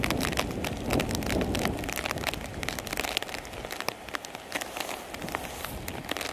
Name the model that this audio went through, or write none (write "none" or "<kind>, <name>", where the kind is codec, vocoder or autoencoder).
none